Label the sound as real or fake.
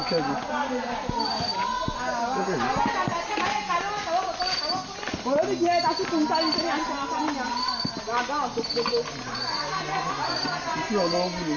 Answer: real